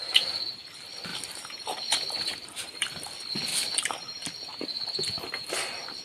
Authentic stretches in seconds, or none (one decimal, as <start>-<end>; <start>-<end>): 0.0-1.1; 3.0-3.5; 5.5-6.0